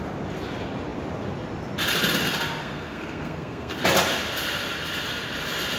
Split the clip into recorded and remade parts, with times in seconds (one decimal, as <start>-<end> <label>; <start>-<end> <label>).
0.0-2.6 recorded; 2.6-3.8 remade; 3.8-5.8 recorded

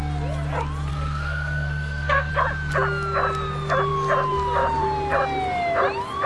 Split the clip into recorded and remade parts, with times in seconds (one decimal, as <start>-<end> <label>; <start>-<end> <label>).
0.0-0.9 recorded; 0.9-2.3 remade; 2.3-6.3 recorded

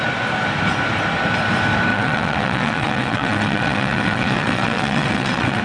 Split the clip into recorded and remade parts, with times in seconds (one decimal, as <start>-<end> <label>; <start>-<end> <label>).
0.0-1.9 recorded; 1.9-5.6 remade